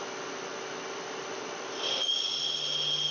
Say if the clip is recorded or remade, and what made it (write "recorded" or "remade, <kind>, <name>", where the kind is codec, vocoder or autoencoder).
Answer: recorded